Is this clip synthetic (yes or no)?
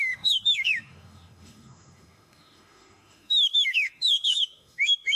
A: yes